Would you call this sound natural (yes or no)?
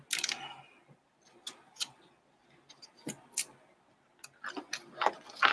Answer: yes